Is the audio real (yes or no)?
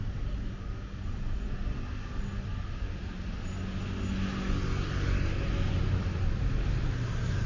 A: yes